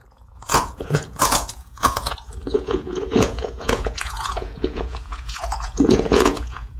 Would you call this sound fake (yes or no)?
yes